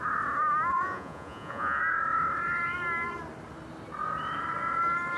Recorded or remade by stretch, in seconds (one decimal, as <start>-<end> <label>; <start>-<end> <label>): 0.0-0.7 recorded; 0.7-1.8 remade; 1.8-5.2 recorded